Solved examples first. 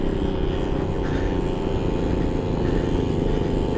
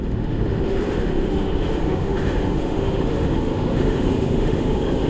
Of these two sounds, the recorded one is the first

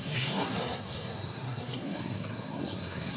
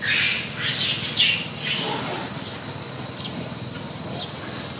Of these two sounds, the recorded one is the second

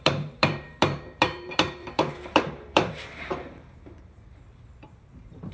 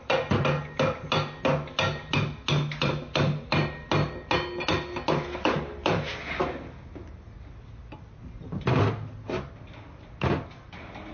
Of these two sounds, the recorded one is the second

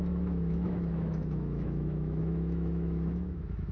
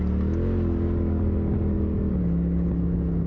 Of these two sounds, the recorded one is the second